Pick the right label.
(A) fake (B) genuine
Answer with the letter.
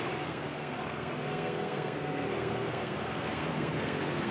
A